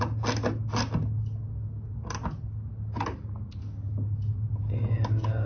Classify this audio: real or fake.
real